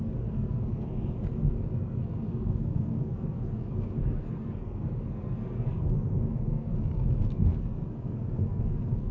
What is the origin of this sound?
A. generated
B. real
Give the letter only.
A